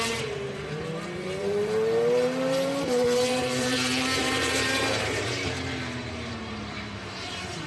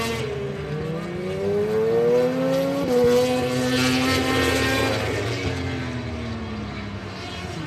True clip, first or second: second